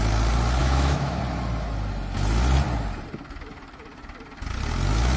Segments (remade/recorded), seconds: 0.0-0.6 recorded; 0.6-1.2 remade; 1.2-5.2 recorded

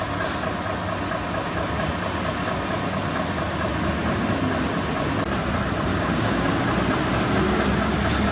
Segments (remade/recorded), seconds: 0.0-5.9 recorded; 5.9-6.4 remade; 6.4-8.3 recorded

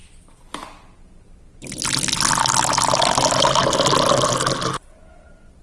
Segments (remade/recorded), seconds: 0.0-5.6 recorded

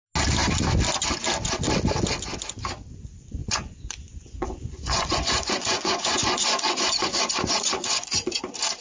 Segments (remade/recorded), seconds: 0.0-3.4 recorded; 3.4-8.4 remade; 8.4-8.8 recorded

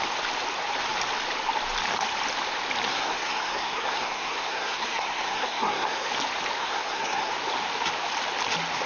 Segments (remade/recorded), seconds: 0.0-2.9 recorded; 2.9-6.1 remade; 6.1-6.6 recorded; 6.6-7.3 remade; 7.3-8.9 recorded